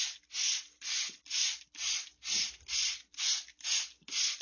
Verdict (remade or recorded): recorded